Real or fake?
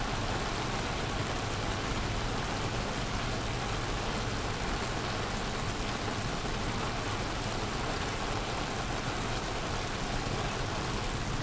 real